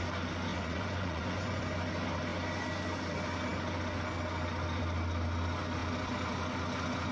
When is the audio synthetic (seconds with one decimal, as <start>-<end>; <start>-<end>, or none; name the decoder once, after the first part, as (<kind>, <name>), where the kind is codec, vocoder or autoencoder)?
0.5-1.6 (vocoder, Vocos)